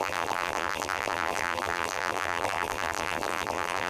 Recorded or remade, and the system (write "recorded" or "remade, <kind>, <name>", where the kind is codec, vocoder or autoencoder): remade, vocoder, BigVGAN v2